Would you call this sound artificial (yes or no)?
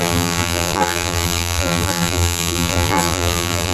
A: yes